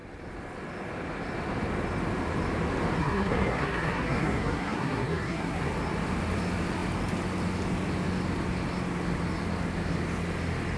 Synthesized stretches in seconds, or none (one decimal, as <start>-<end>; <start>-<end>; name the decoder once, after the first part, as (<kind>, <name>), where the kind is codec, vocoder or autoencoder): 3.0-5.7 (codec, SNAC)